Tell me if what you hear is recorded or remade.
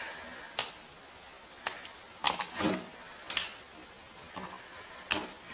recorded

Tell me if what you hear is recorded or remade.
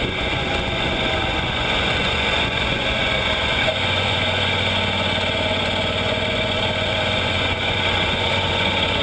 remade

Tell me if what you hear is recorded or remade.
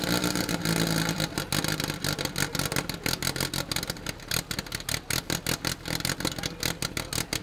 recorded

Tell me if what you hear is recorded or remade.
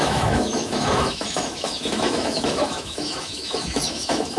remade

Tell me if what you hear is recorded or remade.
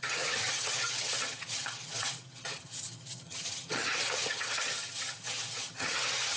remade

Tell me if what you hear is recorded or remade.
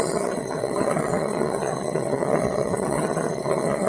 remade